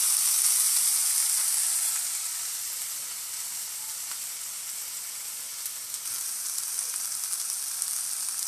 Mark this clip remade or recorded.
recorded